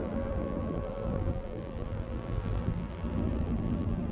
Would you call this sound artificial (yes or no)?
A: yes